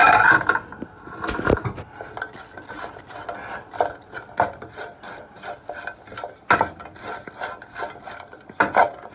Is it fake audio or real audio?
real